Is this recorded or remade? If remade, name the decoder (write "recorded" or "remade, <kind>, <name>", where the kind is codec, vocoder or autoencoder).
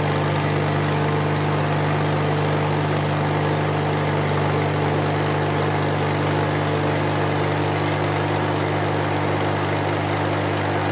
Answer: recorded